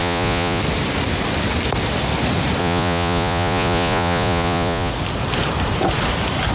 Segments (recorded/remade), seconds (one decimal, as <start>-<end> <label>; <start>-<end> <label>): 0.0-0.6 remade; 0.6-2.6 recorded; 2.6-4.9 remade; 4.9-6.5 recorded